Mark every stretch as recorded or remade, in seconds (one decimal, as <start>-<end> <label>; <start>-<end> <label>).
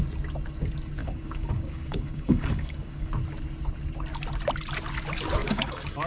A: 0.0-1.0 recorded; 1.0-3.1 remade; 3.1-5.4 recorded; 5.4-6.1 remade